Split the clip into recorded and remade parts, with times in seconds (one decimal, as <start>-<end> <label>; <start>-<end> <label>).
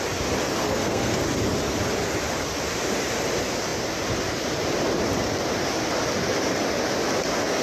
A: 0.0-0.6 recorded; 0.6-1.2 remade; 1.2-7.6 recorded